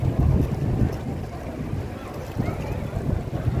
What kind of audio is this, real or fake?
real